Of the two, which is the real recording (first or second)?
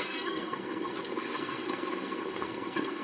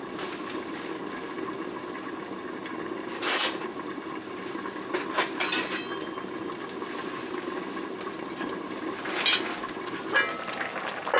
second